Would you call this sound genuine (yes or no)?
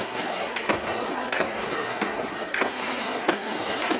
no